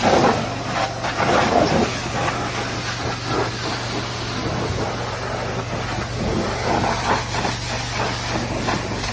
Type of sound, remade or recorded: recorded